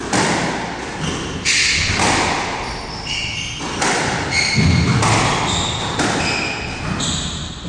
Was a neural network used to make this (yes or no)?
no